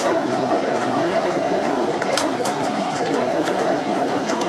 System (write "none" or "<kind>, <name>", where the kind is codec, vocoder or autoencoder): codec, SNAC